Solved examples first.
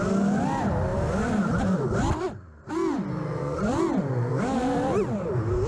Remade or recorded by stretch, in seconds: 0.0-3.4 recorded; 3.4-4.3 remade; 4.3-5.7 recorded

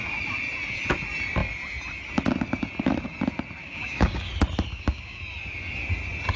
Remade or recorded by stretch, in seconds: 0.0-3.6 recorded; 3.6-4.3 remade; 4.3-4.7 recorded; 4.7-5.2 remade; 5.2-6.4 recorded

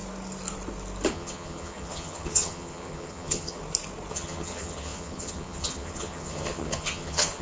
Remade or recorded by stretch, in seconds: 0.0-1.1 recorded; 1.1-3.6 remade; 3.6-4.1 recorded; 4.1-7.4 remade

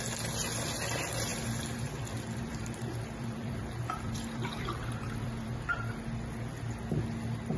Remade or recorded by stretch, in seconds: 0.0-1.3 recorded; 1.3-5.9 remade; 5.9-7.6 recorded

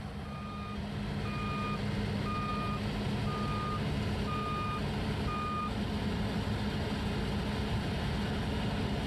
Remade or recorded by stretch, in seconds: 0.0-9.1 recorded

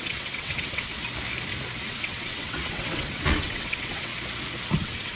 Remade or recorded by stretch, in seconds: 0.0-0.9 remade; 0.9-1.8 recorded; 1.8-4.1 remade; 4.1-4.7 recorded; 4.7-5.2 remade

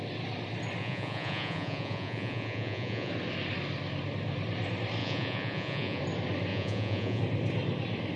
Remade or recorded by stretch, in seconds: 0.0-0.8 recorded; 0.8-3.1 remade; 3.1-5.0 recorded; 5.0-6.0 remade; 6.0-6.5 recorded; 6.5-7.2 remade; 7.2-8.2 recorded